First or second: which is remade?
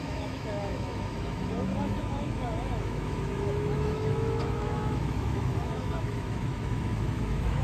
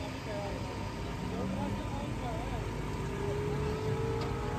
first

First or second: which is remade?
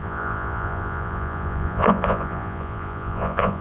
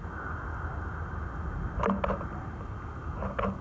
first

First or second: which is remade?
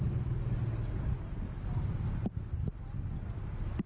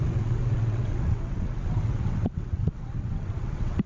second